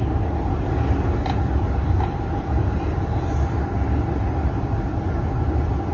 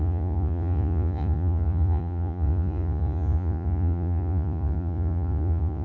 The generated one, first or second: second